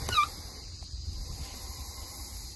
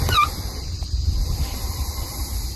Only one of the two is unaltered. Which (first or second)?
first